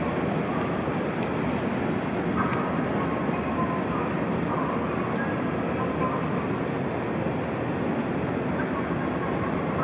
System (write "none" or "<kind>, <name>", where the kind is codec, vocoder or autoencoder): none